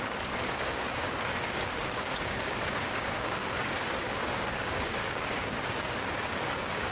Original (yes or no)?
no